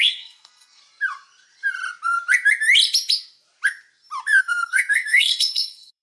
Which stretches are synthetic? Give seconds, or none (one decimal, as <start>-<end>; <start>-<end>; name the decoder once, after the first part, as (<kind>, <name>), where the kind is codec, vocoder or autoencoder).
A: 0.0-0.8 (codec, SNAC); 4.4-6.0